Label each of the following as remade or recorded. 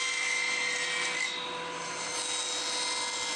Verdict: recorded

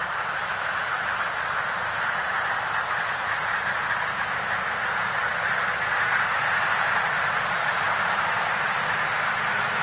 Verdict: recorded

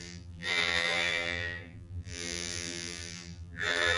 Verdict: remade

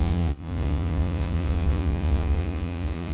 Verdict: remade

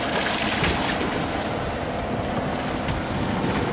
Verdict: recorded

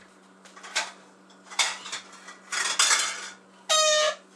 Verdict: recorded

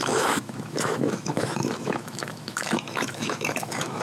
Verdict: remade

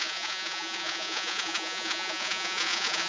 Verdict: remade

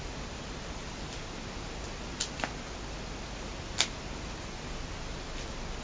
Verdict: recorded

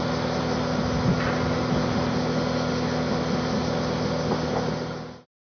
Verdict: recorded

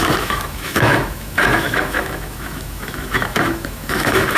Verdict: remade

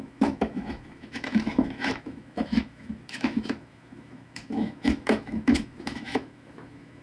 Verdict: remade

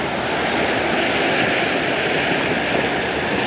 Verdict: recorded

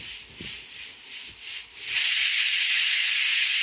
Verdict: recorded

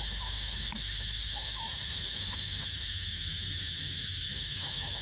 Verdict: remade